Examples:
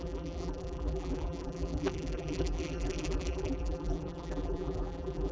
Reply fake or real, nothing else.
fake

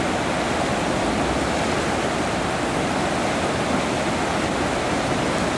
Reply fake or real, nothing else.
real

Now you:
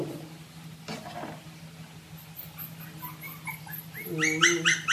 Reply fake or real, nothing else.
real